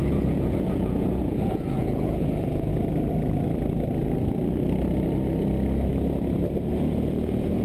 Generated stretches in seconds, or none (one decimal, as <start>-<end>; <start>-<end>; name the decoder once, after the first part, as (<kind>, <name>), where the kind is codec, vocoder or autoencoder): 0.0-2.7 (vocoder, Vocos); 6.8-7.6